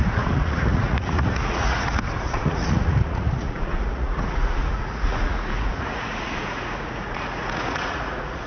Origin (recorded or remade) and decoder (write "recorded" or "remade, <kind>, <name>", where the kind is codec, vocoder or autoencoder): remade, vocoder, Vocos